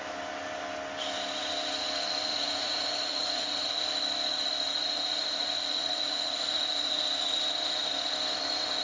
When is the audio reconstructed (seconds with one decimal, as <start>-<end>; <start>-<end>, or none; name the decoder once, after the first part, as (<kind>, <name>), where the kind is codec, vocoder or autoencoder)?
2.3-3.8 (vocoder, Vocos); 4.7-7.0